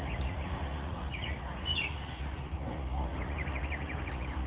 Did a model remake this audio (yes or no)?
yes